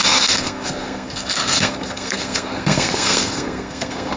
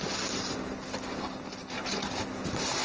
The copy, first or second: first